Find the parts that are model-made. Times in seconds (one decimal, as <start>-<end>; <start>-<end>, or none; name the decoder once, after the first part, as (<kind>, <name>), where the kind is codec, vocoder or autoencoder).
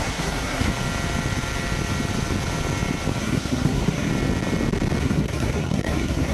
0.0-0.7 (codec, SNAC); 3.2-4.1; 5.0-6.3